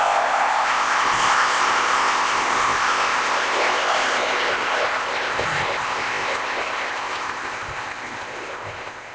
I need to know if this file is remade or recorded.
remade